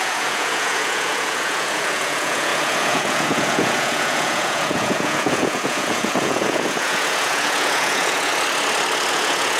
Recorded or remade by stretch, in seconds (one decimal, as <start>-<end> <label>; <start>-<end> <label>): 0.0-8.3 remade; 8.3-9.1 recorded; 9.1-9.6 remade

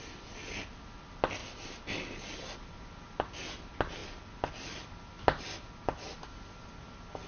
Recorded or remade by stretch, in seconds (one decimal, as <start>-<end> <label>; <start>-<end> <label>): 0.0-7.3 recorded